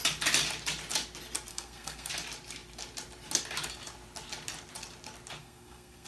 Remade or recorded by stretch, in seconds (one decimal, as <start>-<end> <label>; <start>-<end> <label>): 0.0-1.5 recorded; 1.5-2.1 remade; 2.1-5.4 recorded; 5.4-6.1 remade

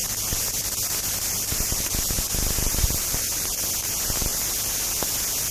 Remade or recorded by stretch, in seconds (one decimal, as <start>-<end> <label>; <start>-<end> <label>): 0.0-5.5 remade

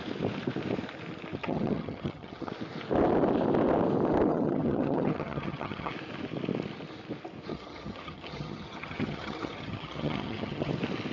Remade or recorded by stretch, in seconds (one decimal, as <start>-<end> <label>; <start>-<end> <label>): 0.0-1.4 recorded; 1.4-2.5 remade; 2.5-4.3 recorded; 4.3-5.9 remade; 5.9-7.5 recorded; 7.5-10.7 remade; 10.7-11.1 recorded

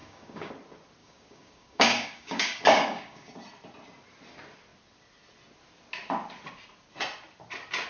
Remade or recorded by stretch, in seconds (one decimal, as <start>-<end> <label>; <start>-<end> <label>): 0.0-0.5 remade; 0.5-1.0 recorded; 1.0-3.3 remade; 3.3-7.9 recorded